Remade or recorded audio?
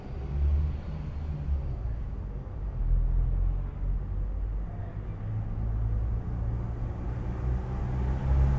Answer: recorded